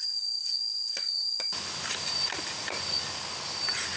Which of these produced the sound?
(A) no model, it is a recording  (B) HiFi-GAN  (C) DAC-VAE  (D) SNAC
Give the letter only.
A